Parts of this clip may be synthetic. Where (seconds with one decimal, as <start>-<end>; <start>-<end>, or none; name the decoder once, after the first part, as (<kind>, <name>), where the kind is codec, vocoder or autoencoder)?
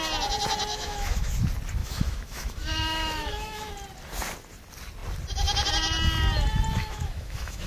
0.7-1.3 (autoencoder, DAC-VAE); 1.8-3.7; 6.7-7.7